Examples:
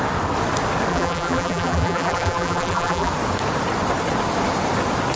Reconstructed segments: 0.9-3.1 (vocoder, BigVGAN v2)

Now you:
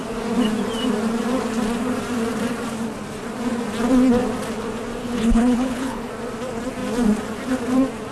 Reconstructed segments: 5.0-6.1 (codec, HILCodec)

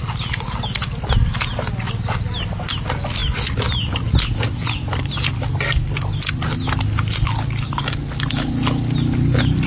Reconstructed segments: none

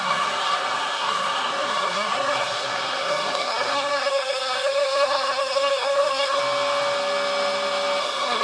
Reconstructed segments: 0.0-6.4 (codec, SNAC); 8.0-8.4

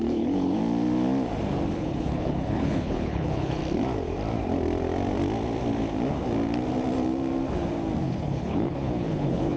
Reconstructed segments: 0.0-0.6 (codec, HILCodec); 1.7-3.6; 8.0-9.6

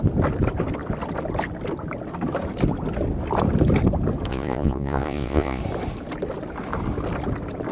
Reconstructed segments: 4.3-5.6 (vocoder, Vocos)

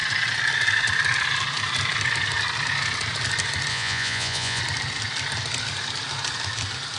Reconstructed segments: 3.7-4.6 (vocoder, Vocos)